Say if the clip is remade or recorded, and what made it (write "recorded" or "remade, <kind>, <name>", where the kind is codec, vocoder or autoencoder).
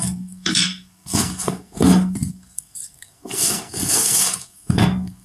remade, codec, SNAC